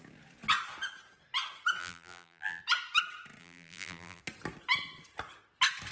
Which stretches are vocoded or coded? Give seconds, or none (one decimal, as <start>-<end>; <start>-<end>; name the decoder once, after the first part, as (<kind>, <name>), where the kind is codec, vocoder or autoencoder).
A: 1.8-2.6 (vocoder, BigVGAN v2); 3.4-4.2